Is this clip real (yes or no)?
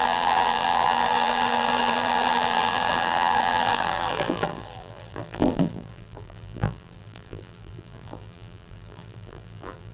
no